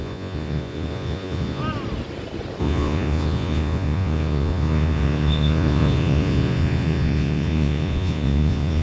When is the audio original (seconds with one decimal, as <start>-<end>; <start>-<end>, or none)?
1.6-2.6